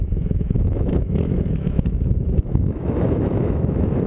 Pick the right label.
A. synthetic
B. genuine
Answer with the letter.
A